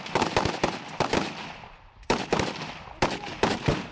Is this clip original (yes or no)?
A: no